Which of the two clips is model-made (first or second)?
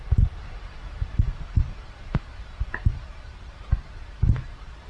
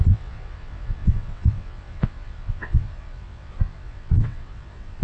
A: second